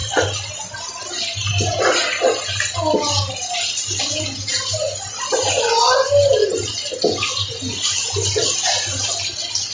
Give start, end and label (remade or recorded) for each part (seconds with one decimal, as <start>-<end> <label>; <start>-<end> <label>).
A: 0.0-9.7 recorded